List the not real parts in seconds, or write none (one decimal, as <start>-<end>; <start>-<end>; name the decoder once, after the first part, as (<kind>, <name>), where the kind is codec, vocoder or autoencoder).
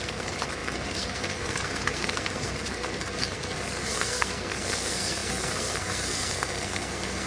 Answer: 0.0-7.3 (codec, SNAC)